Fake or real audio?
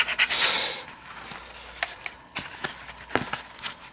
real